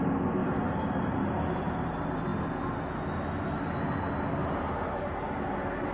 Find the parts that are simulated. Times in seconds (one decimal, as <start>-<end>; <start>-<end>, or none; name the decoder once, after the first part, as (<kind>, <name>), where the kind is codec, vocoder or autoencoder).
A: 0.4-1.3 (vocoder, BigVGAN v2)